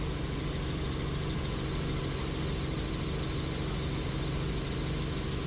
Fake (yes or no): no